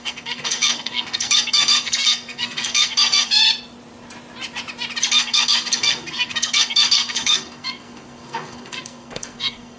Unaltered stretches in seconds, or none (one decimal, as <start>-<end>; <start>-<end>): 3.4-5.1